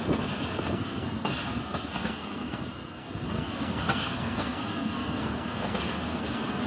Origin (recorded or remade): remade